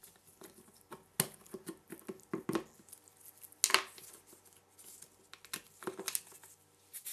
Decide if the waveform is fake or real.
real